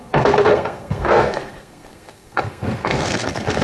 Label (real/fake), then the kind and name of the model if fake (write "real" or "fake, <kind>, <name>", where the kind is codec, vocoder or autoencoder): fake, codec, SNAC